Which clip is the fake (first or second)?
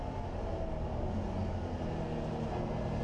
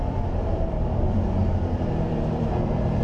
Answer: second